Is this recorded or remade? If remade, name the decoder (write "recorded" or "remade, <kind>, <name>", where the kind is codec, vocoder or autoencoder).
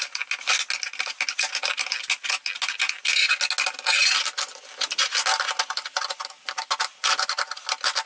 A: recorded